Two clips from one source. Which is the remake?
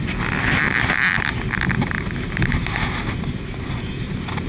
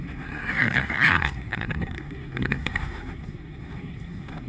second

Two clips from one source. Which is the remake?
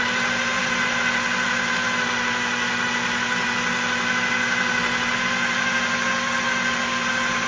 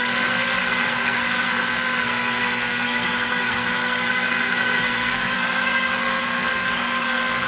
second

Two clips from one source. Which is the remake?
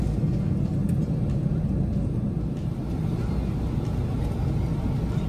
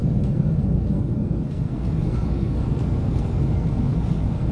second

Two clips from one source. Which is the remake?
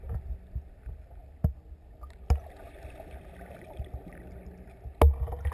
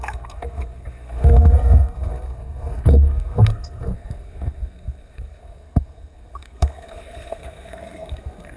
second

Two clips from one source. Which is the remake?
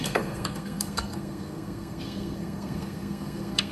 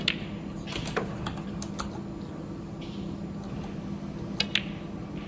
first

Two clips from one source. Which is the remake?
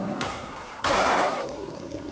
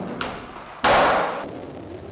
first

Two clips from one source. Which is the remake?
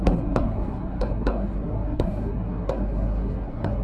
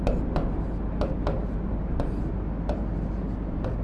first